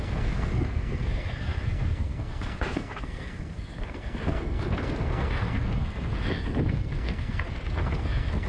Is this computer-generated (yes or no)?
yes